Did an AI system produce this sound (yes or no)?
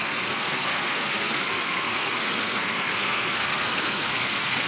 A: yes